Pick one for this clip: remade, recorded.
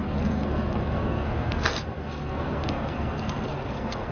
remade